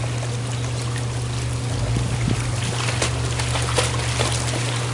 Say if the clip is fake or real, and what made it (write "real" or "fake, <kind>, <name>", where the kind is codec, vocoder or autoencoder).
real